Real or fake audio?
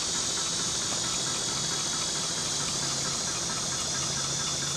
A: real